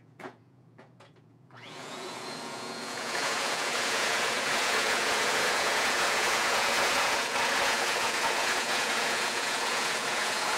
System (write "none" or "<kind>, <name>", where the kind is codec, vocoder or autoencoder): vocoder, Vocos